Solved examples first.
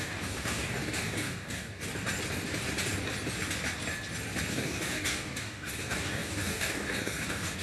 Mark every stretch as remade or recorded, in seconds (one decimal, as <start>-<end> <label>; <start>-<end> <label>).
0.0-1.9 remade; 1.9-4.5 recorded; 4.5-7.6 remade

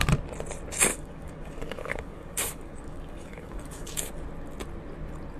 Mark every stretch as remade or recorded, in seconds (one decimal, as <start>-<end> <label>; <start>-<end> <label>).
0.0-0.9 recorded; 0.9-4.1 remade; 4.1-5.4 recorded

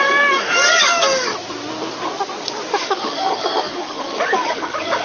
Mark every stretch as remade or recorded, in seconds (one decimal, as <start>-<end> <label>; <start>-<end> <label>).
0.0-1.3 remade; 1.3-2.7 recorded; 2.7-5.0 remade

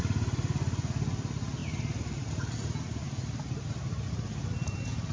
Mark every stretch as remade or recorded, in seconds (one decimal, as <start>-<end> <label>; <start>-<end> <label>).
0.0-5.1 recorded

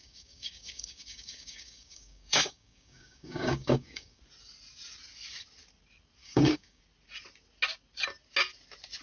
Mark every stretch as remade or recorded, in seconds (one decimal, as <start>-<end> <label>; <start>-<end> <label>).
0.0-4.2 remade; 4.2-6.2 recorded; 6.2-6.8 remade; 6.8-9.0 recorded

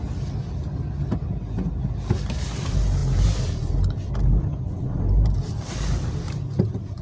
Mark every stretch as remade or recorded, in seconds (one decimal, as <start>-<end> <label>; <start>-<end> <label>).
0.0-7.0 recorded

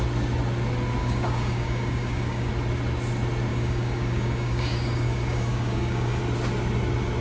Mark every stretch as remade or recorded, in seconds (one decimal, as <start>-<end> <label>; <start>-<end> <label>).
0.0-1.0 recorded; 1.0-2.5 remade; 2.5-3.5 recorded; 3.5-6.2 remade; 6.2-7.2 recorded